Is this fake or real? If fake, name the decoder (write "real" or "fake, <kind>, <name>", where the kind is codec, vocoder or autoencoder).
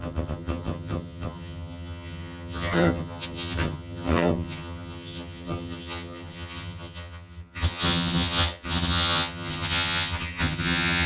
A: fake, vocoder, HiFi-GAN